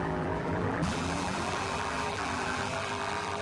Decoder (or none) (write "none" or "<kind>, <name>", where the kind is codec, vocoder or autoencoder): vocoder, BigVGAN v2